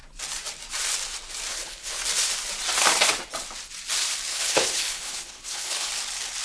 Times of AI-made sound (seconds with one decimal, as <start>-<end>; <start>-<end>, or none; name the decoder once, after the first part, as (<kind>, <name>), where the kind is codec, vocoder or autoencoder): 1.5-2.0 (codec, HILCodec); 4.3-5.9